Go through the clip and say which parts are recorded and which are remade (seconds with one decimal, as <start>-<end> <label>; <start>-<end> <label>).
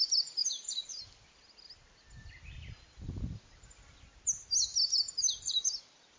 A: 0.0-0.4 recorded; 0.4-1.0 remade; 1.0-6.2 recorded